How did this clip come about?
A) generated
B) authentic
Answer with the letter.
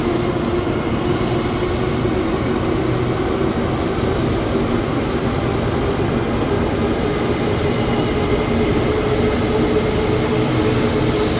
B